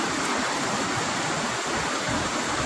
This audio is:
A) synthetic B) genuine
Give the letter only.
B